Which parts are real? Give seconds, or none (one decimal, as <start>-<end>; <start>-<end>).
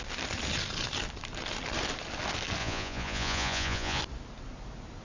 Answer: 0.0-2.6; 4.0-5.0